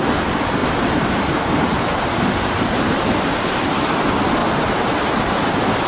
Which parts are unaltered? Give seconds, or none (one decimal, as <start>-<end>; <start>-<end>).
0.0-0.6; 4.0-5.9